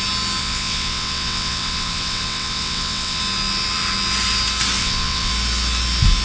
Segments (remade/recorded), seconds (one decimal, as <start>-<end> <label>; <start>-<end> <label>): 0.0-0.4 recorded; 0.4-3.2 remade; 3.2-4.8 recorded; 4.8-5.3 remade; 5.3-6.2 recorded